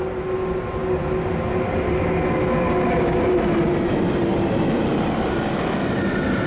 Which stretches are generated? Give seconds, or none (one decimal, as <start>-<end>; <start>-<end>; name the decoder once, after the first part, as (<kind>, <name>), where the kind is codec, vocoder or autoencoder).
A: none